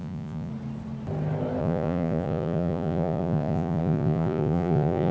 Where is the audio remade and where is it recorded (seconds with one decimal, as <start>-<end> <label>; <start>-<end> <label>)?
0.0-0.5 remade; 0.5-1.6 recorded; 1.6-5.1 remade

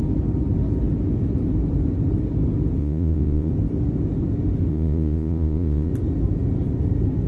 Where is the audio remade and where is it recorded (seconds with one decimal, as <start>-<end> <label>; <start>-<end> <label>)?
0.0-2.8 recorded; 2.8-3.5 remade; 3.5-4.7 recorded; 4.7-5.9 remade; 5.9-7.3 recorded